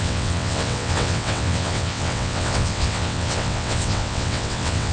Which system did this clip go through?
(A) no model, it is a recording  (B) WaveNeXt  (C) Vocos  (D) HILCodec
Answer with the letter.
B